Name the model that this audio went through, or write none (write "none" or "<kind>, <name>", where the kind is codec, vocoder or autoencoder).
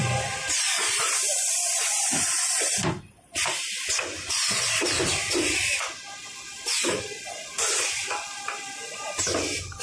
vocoder, BigVGAN v2